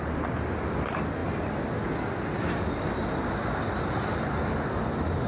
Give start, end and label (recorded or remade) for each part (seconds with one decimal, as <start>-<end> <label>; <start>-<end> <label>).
0.0-5.3 recorded